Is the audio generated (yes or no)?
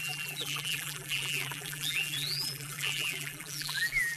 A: yes